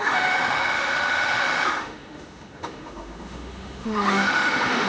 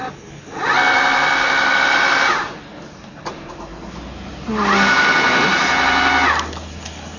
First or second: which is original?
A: second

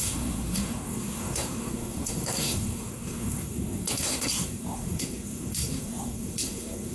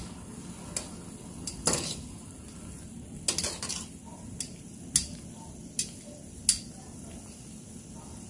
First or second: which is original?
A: second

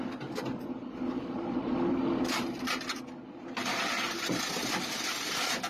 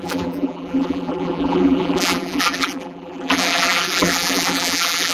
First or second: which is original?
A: first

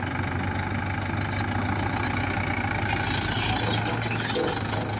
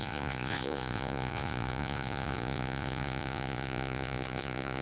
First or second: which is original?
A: first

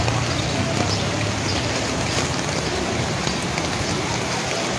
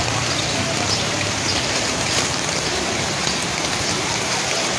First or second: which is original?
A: first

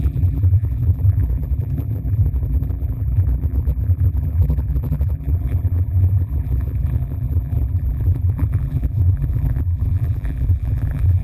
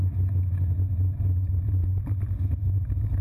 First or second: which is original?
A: second